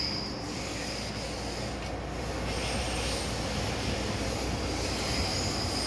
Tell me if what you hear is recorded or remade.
recorded